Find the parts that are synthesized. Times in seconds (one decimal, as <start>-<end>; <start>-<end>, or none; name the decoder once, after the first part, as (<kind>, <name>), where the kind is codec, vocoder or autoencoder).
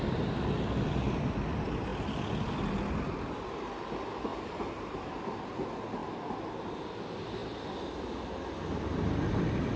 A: none